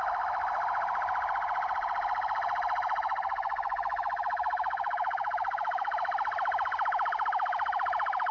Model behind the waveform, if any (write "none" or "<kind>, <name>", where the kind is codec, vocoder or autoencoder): none